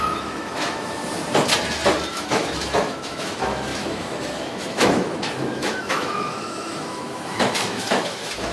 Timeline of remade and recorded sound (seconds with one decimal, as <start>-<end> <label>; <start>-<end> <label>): 0.0-1.0 remade; 1.0-2.1 recorded; 2.1-8.5 remade